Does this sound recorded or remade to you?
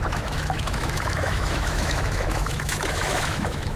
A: remade